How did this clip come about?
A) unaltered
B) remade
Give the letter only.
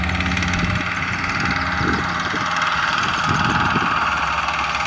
A